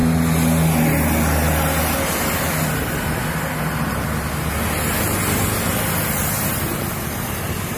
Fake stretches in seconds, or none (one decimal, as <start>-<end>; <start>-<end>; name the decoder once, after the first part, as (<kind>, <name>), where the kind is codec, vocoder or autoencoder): none